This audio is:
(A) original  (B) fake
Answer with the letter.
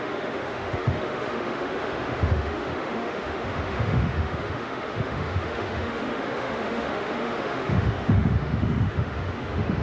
B